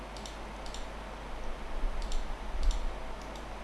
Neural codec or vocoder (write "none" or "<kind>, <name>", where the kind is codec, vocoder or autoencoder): none